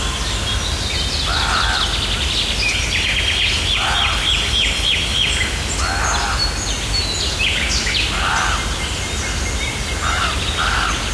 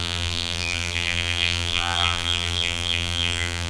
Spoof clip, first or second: second